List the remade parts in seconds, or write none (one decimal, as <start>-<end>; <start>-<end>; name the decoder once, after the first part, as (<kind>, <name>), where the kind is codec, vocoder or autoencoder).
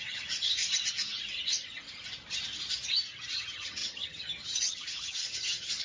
0.0-0.6 (vocoder, HiFi-GAN); 3.3-5.8